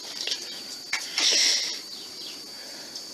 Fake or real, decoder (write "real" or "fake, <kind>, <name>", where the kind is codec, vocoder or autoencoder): real